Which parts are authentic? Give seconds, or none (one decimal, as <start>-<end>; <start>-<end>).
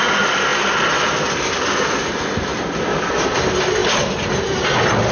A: 0.0-5.1